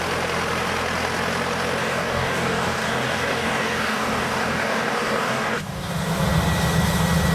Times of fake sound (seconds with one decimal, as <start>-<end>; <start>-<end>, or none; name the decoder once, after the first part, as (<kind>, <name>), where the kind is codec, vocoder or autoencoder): 1.8-5.9 (codec, DAC)

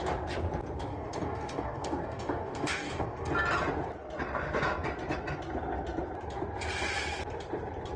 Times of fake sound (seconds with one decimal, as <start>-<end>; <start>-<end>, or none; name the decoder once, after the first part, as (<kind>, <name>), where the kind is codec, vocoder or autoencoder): 0.9-3.3 (codec, DAC)